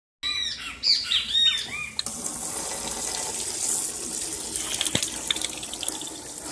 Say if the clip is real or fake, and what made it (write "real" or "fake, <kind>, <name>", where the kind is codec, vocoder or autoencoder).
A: real